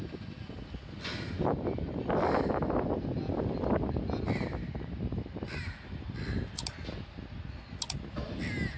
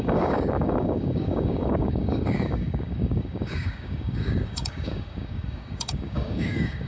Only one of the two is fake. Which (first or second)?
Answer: second